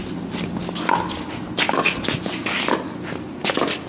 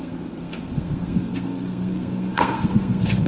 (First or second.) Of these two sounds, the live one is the first